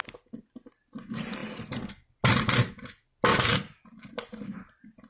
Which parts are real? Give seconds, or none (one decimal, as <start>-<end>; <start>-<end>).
0.0-3.3; 4.1-5.1